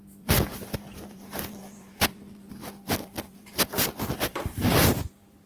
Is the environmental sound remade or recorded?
remade